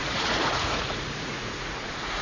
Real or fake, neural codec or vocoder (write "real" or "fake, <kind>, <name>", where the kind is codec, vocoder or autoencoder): fake, vocoder, Vocos